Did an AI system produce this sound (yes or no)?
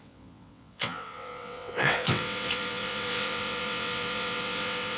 yes